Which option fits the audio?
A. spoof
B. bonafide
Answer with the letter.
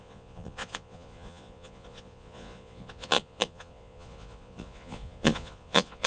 A